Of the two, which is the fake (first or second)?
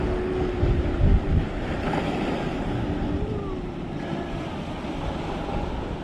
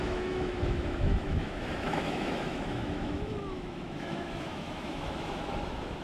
second